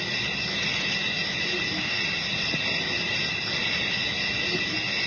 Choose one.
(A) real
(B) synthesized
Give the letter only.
A